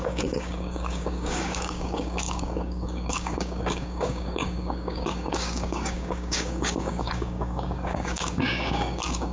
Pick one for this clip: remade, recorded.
remade